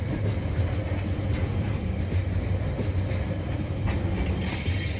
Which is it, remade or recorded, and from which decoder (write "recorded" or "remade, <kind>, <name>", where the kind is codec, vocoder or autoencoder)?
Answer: recorded